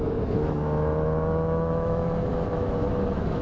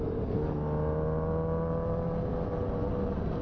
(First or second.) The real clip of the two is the second